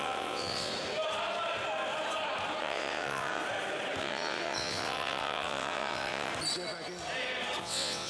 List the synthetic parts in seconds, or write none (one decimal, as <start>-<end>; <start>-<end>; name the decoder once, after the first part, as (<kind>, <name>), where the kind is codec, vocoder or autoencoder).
0.0-0.7 (vocoder, WaveNeXt); 2.6-3.4; 4.0-6.3; 7.6-8.1